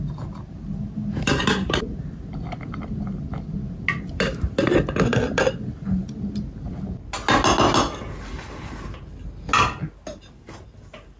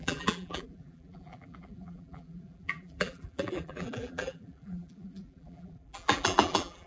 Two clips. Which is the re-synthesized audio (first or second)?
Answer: second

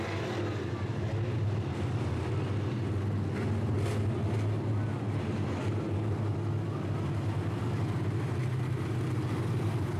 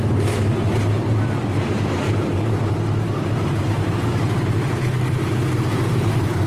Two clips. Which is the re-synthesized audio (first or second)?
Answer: second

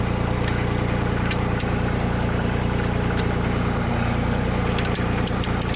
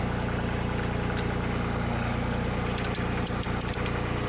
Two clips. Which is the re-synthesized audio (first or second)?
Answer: first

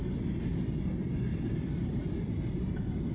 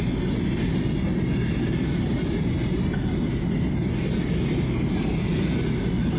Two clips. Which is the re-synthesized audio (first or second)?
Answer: first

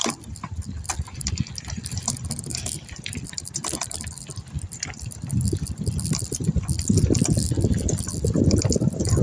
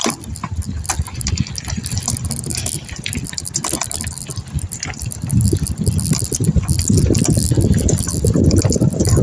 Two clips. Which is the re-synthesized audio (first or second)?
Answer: first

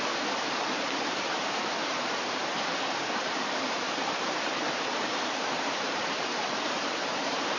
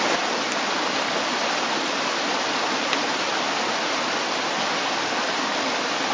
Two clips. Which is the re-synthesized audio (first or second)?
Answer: first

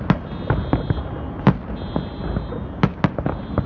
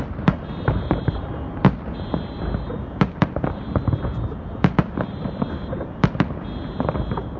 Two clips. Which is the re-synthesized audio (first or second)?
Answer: second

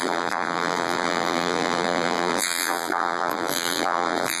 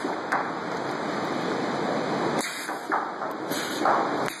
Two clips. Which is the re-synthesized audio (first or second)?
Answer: first